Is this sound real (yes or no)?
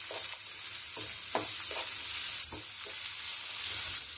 yes